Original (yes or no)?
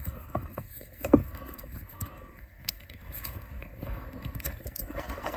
no